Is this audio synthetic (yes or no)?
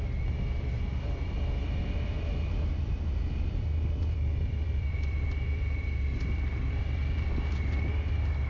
yes